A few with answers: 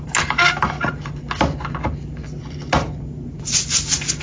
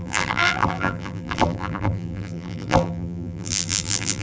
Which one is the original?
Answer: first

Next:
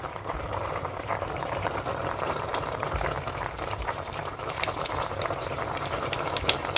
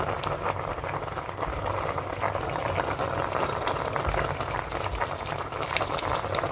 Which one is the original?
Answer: second